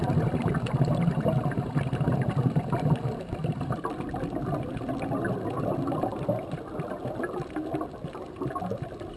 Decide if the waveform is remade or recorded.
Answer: recorded